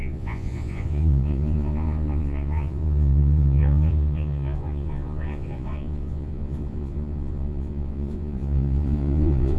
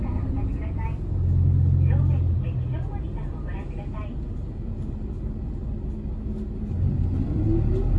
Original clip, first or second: second